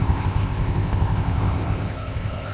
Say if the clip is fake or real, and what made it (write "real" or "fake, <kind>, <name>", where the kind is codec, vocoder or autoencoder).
fake, codec, ZipCodec